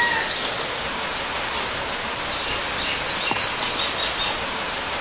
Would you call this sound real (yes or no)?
yes